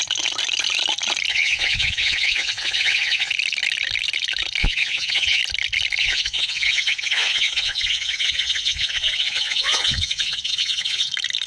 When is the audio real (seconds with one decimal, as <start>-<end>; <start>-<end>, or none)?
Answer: 0.0-1.3; 3.3-4.6; 5.4-6.0; 11.1-11.5